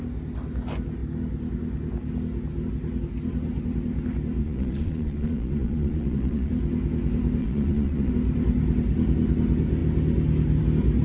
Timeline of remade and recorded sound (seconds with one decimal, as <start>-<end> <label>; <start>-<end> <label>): 0.0-4.4 recorded; 4.4-6.5 remade; 6.5-7.4 recorded; 7.4-8.1 remade; 8.1-11.0 recorded